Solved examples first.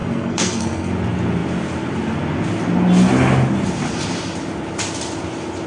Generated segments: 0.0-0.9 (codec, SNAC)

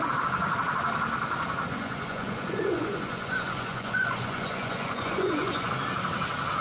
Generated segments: 1.7-5.7 (vocoder, Vocos)

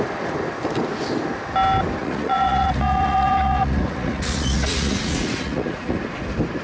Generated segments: 2.0-6.0 (vocoder, Vocos)

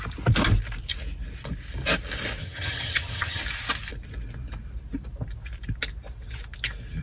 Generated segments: 2.4-3.4 (vocoder, HiFi-GAN)

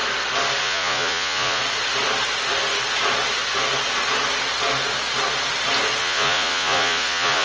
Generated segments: 0.6-1.6 (vocoder, Vocos); 6.0-7.4